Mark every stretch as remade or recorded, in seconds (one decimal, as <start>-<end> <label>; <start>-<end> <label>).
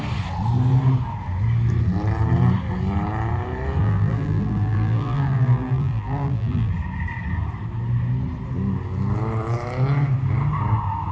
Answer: 0.0-3.8 recorded; 3.8-6.7 remade; 6.7-11.1 recorded